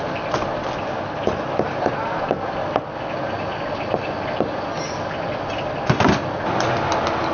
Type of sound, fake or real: real